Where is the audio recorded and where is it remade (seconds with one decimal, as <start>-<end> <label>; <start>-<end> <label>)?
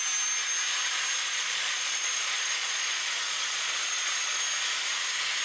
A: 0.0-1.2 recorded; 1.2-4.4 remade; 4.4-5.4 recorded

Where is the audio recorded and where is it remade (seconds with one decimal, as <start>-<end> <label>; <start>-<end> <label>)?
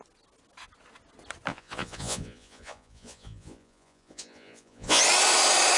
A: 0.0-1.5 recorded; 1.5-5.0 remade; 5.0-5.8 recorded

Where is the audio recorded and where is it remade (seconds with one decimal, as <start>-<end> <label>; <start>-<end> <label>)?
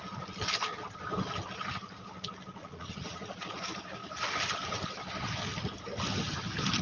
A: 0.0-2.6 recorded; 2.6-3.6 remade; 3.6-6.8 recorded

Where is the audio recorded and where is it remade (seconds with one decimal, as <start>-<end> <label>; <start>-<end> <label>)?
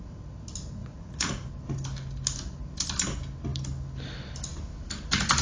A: 0.0-0.8 recorded; 0.8-1.5 remade; 1.5-5.4 recorded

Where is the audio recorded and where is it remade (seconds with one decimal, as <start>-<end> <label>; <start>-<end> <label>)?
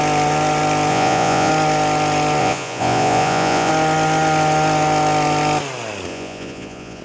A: 0.0-0.9 recorded; 0.9-1.5 remade; 1.5-2.4 recorded; 2.4-3.7 remade; 3.7-6.1 recorded; 6.1-7.0 remade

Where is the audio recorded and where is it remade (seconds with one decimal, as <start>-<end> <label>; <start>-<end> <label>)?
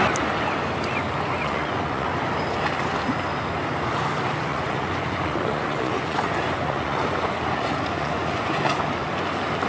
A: 0.0-1.4 recorded; 1.4-2.1 remade; 2.1-4.5 recorded; 4.5-8.8 remade; 8.8-9.7 recorded